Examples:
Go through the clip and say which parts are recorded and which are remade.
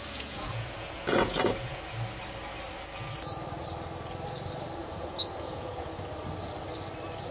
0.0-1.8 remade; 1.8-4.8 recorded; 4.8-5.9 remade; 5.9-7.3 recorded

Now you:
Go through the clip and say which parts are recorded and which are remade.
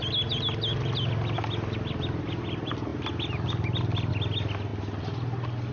0.0-5.7 recorded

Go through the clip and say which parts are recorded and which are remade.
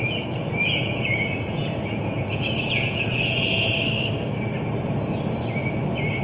0.0-3.7 remade; 3.7-6.2 recorded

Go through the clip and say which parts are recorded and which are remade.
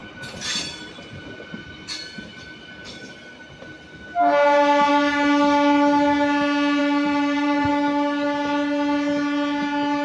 0.0-1.3 remade; 1.3-6.8 recorded; 6.8-7.7 remade; 7.7-10.0 recorded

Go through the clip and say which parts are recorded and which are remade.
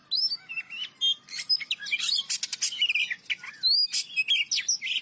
0.0-5.0 recorded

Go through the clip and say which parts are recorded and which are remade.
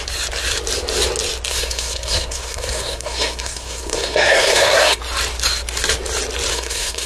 0.0-1.5 recorded; 1.5-5.0 remade; 5.0-6.5 recorded; 6.5-7.1 remade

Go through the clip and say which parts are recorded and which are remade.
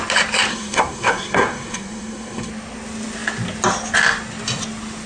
0.0-0.5 recorded; 0.5-2.5 remade; 2.5-5.1 recorded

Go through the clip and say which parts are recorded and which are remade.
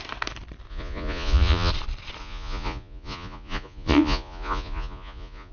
0.0-0.7 recorded; 0.7-1.7 remade; 1.7-2.2 recorded; 2.2-5.5 remade